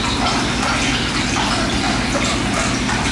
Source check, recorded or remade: recorded